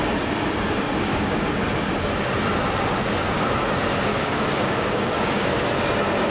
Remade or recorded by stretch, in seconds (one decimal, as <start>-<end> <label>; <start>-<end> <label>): 0.0-1.1 recorded; 1.1-1.7 remade; 1.7-4.1 recorded; 4.1-5.5 remade; 5.5-6.3 recorded